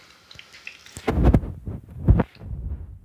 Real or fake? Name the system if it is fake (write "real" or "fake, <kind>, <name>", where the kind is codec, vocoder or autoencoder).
real